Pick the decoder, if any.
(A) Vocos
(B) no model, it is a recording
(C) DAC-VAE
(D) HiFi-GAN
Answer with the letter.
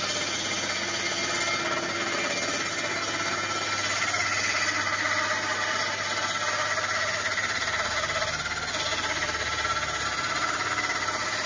B